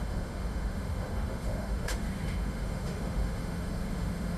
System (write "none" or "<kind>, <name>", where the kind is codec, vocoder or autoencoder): autoencoder, DAC-VAE